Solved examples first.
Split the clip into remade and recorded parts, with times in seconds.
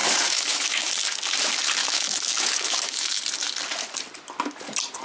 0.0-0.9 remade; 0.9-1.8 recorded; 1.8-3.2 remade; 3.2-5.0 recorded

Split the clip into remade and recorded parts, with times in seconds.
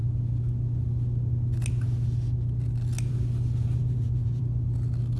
0.0-3.8 recorded; 3.8-4.4 remade; 4.4-5.2 recorded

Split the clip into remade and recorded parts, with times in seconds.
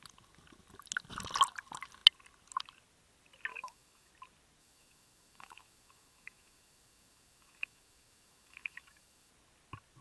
0.0-3.5 recorded; 3.5-4.1 remade; 4.1-4.6 recorded; 4.6-9.3 remade; 9.3-10.0 recorded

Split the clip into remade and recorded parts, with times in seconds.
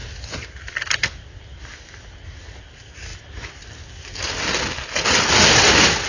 0.0-6.1 recorded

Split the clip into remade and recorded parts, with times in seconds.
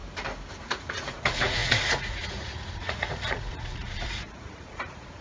0.0-0.6 recorded; 0.6-5.2 remade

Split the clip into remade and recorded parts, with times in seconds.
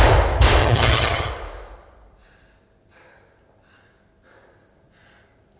0.0-0.6 recorded; 0.6-1.3 remade; 1.3-5.6 recorded